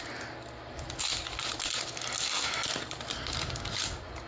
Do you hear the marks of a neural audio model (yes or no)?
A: no